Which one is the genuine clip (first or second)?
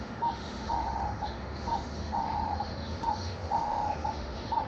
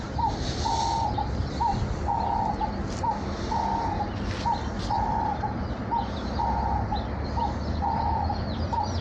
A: second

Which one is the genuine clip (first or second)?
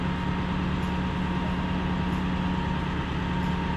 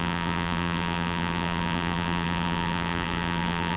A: first